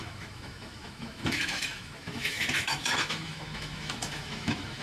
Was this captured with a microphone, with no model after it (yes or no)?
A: no